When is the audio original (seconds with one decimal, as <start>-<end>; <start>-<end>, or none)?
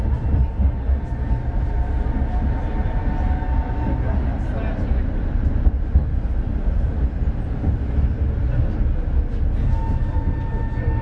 0.0-11.0